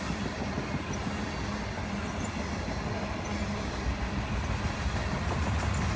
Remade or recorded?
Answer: recorded